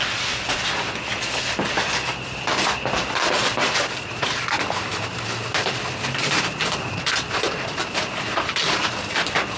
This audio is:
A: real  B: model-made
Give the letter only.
A